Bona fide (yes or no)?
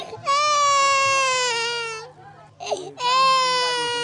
yes